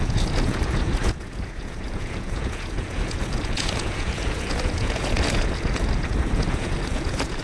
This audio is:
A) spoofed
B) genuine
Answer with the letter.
A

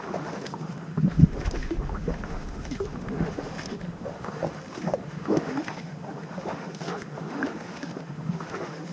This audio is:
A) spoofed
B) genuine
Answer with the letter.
A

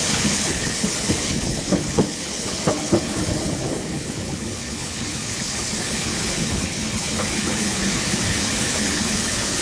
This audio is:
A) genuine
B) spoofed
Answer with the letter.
B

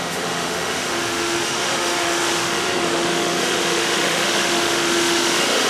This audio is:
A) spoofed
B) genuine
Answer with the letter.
A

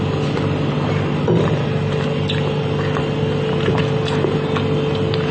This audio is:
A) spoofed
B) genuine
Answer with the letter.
B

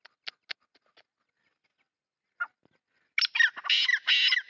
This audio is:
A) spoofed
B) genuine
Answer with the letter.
B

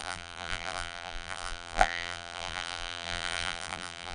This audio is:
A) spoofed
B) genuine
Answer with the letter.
A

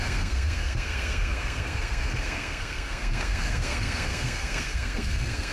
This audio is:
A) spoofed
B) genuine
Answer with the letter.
A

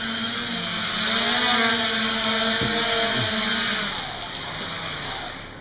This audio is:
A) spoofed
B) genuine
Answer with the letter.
B